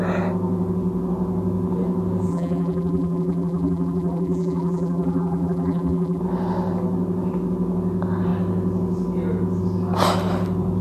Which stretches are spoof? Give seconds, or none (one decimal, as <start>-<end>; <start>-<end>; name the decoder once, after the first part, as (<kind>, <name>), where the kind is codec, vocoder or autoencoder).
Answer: 2.3-6.2 (vocoder, BigVGAN v2)